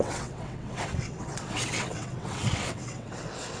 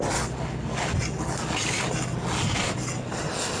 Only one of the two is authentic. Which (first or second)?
second